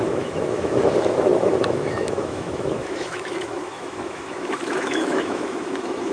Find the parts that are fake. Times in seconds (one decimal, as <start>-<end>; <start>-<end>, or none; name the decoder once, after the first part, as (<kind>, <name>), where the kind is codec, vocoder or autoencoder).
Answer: 0.0-6.1 (autoencoder, DAC-VAE)